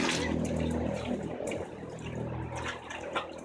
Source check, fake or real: real